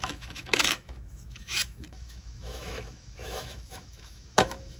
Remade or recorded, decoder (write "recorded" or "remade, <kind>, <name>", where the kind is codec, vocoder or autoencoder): remade, autoencoder, DAC-VAE